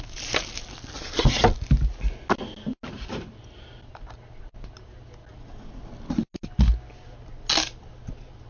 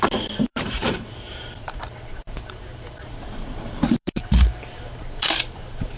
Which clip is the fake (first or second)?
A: second